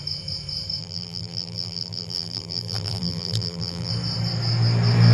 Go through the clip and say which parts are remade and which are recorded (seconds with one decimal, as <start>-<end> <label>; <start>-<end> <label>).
0.0-0.8 recorded; 0.8-3.9 remade; 3.9-5.1 recorded